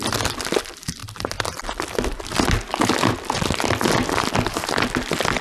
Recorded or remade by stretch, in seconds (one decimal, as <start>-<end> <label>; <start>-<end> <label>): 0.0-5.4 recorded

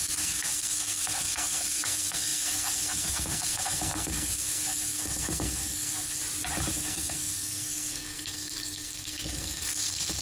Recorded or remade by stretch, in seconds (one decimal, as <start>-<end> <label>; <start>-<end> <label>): 0.0-6.2 remade; 6.2-6.7 recorded; 6.7-10.2 remade

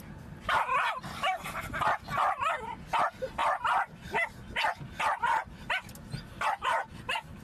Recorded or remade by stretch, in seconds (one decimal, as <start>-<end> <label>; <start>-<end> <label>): 0.0-7.4 recorded